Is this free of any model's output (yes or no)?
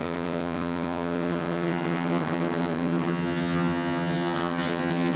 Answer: no